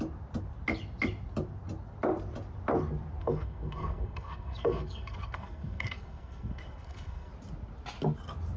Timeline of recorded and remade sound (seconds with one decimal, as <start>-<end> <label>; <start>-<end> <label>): 0.0-3.2 recorded; 3.2-7.3 remade; 7.3-8.6 recorded